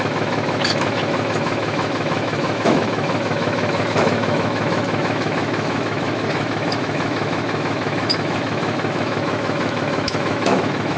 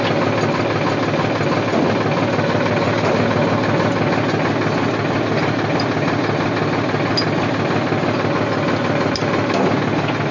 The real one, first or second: second